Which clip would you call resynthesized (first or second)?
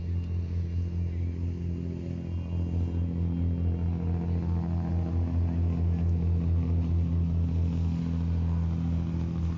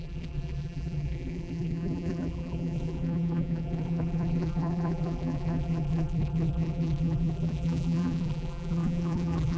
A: second